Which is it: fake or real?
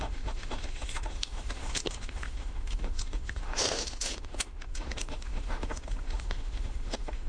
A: fake